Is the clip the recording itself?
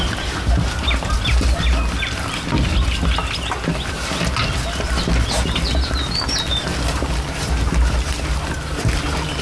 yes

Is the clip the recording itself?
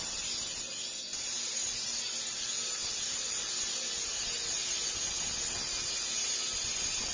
yes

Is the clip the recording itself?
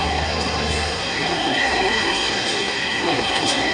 no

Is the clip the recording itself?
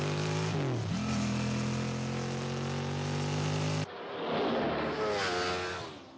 yes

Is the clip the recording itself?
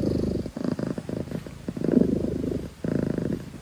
no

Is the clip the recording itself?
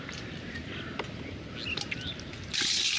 yes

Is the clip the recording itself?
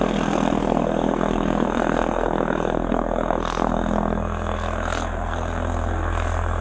no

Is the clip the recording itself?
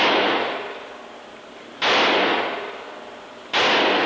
yes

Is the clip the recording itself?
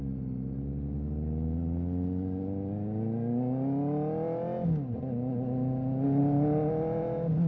yes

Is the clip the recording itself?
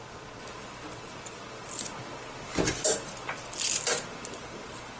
yes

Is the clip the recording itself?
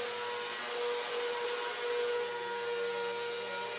yes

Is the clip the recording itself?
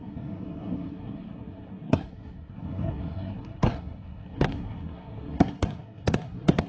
no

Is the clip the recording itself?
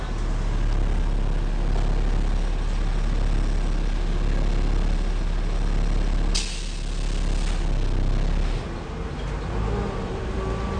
yes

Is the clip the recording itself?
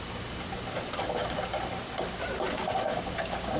yes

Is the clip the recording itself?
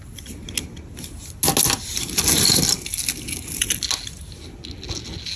yes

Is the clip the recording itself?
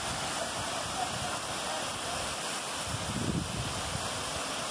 yes